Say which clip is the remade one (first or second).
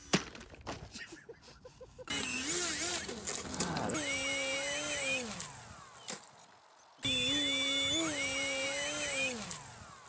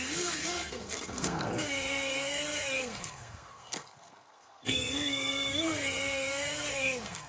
second